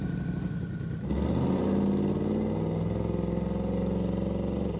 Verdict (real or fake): real